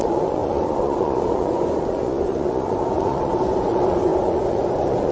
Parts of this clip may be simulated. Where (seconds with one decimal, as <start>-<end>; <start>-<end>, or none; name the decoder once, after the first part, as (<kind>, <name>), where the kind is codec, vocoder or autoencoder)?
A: 0.0-5.1 (vocoder, Vocos)